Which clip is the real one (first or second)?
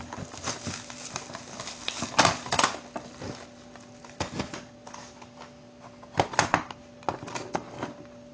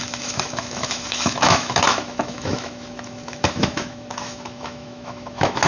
first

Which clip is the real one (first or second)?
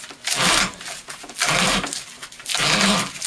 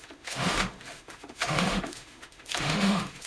first